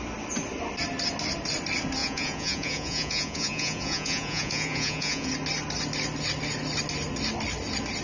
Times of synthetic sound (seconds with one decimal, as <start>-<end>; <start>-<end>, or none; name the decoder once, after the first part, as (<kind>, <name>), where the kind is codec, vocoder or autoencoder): 2.0-5.3 (vocoder, Vocos)